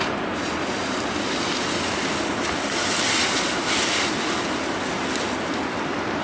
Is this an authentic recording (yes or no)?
yes